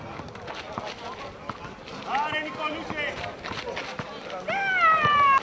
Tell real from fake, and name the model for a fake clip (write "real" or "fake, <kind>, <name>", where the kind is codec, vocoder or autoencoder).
real